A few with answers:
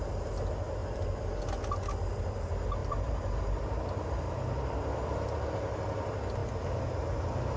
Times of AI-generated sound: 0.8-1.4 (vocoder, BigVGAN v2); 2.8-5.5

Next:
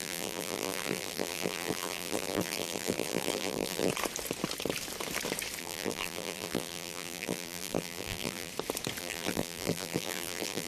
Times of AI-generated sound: 0.0-3.9 (vocoder, BigVGAN v2); 5.6-8.5; 9.0-10.7